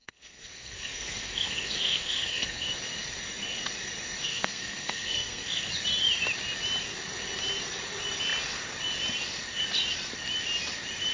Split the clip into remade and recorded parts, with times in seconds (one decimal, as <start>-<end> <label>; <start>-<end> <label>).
0.0-2.7 remade; 2.7-4.2 recorded; 4.2-5.7 remade; 5.7-11.1 recorded